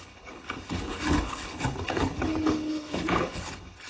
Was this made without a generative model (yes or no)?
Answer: no